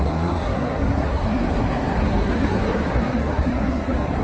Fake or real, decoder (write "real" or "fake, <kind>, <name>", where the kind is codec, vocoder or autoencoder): fake, codec, SNAC